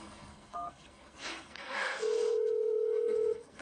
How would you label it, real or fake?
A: fake